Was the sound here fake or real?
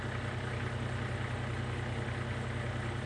real